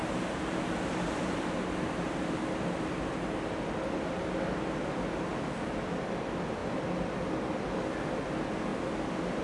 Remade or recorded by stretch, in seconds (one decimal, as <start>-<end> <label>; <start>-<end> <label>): 0.0-2.9 remade; 2.9-9.4 recorded